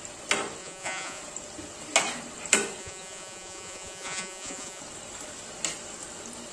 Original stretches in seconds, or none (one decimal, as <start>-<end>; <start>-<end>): 0.0-0.6; 1.2-2.8; 4.8-6.5

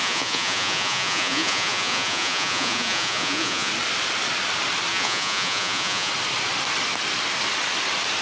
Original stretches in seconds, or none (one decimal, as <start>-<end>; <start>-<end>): 3.7-4.9; 6.1-8.2

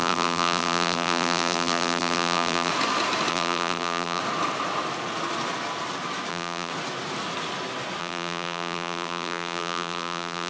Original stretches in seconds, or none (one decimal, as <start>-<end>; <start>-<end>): 2.7-3.3; 4.2-6.3; 6.7-8.0

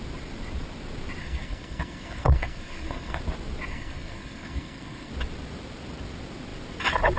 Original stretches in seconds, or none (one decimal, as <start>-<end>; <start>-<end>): 0.0-1.2; 3.2-3.7; 5.1-7.2

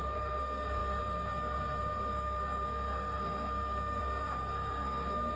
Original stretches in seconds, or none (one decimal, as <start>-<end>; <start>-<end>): none

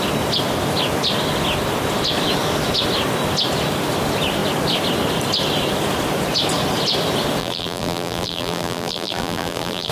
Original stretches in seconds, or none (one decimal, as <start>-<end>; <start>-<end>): 0.0-7.4